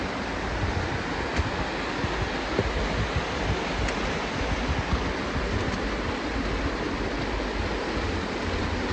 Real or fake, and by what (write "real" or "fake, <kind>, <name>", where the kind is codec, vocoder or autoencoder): real